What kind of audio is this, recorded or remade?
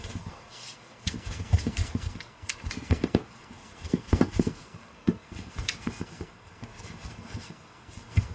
remade